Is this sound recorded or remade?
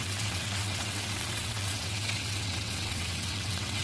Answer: remade